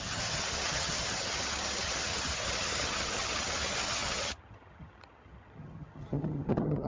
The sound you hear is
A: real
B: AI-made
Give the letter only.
B